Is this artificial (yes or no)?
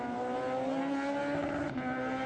no